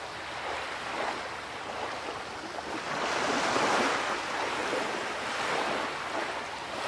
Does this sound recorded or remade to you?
recorded